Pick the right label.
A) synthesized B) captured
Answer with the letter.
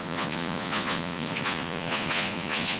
A